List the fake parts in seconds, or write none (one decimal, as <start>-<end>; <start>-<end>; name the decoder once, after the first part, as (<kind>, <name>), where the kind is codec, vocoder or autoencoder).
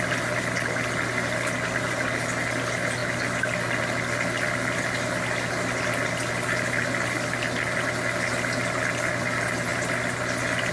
none